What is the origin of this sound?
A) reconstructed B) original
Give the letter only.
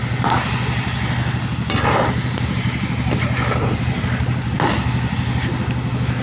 B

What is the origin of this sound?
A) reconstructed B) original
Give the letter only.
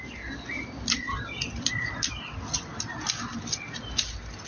B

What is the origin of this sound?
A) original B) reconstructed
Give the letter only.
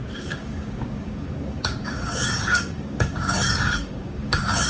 B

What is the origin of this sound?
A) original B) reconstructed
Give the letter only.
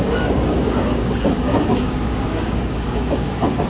B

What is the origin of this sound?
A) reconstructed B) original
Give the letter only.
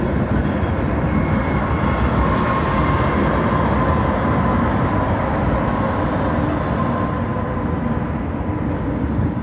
B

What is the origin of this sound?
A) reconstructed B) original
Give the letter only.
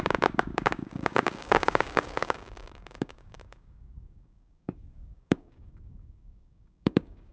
A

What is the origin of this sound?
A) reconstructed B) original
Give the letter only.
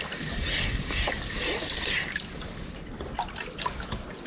B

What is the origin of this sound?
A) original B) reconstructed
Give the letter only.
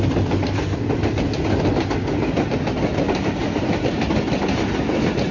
A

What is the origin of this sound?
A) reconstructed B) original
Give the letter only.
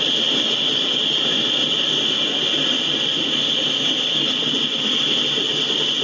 B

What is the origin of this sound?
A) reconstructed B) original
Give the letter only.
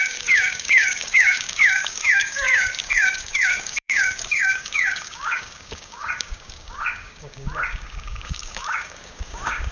A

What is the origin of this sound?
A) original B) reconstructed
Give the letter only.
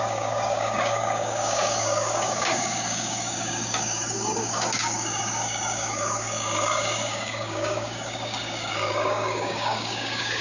B